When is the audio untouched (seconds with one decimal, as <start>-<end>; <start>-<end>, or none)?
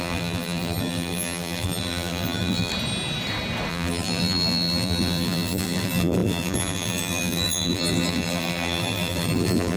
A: 2.7-3.7